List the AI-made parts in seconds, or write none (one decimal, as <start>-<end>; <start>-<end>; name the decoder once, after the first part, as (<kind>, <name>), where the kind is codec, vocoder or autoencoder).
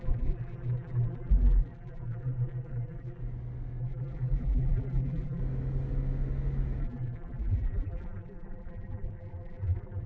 0.0-3.2 (vocoder, BigVGAN v2); 3.8-5.4; 6.8-10.1